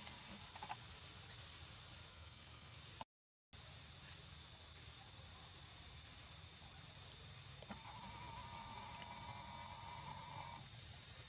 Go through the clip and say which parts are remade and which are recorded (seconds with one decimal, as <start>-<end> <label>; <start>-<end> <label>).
0.0-2.1 recorded; 2.1-2.8 remade; 2.8-11.3 recorded